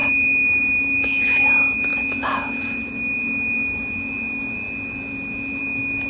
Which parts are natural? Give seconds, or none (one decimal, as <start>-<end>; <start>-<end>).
0.0-6.1